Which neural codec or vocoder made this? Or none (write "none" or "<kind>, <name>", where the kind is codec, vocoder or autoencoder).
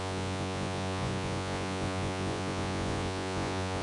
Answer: vocoder, Vocos